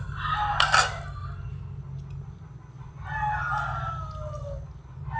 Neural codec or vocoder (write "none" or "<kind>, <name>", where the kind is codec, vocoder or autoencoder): none